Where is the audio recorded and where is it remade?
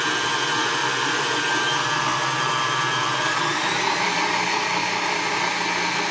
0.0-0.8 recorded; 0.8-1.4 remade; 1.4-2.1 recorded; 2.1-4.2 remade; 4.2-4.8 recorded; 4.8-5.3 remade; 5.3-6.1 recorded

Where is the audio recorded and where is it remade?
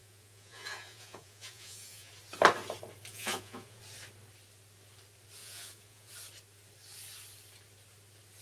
0.0-2.1 remade; 2.1-3.1 recorded; 3.1-3.8 remade; 3.8-5.4 recorded; 5.4-6.1 remade; 6.1-8.4 recorded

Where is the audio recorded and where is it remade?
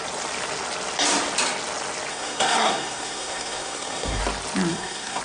0.0-2.1 recorded; 2.1-4.2 remade; 4.2-4.7 recorded; 4.7-5.2 remade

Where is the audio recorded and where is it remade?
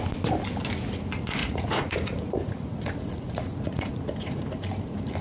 0.0-1.4 recorded; 1.4-4.5 remade; 4.5-5.2 recorded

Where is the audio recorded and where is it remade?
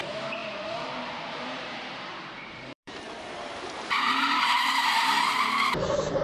0.0-6.2 remade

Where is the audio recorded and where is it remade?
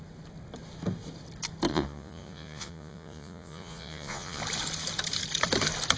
0.0-1.7 recorded; 1.7-4.4 remade; 4.4-6.0 recorded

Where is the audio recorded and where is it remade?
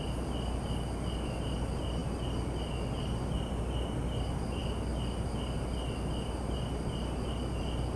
0.0-8.0 recorded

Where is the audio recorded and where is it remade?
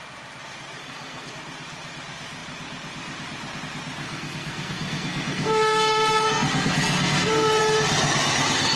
0.0-0.8 recorded; 0.8-1.3 remade; 1.3-4.0 recorded; 4.0-7.6 remade; 7.6-8.8 recorded